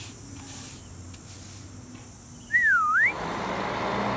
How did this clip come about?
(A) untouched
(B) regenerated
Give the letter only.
A